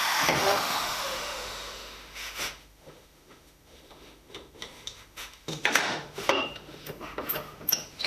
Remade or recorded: remade